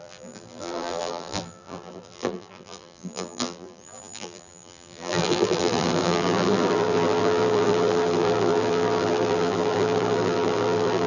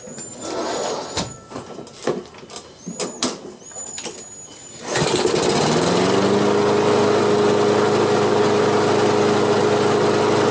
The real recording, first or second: second